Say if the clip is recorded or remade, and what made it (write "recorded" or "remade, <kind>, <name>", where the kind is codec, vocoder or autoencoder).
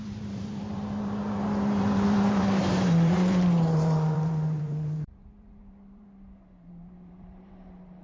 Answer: remade, vocoder, BigVGAN v2